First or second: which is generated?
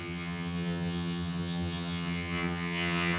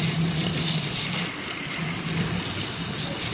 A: first